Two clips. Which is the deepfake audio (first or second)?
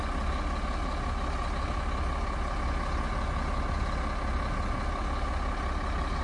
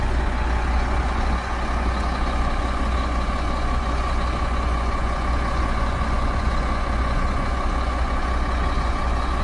second